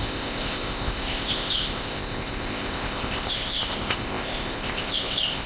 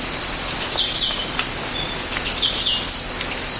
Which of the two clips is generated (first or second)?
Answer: first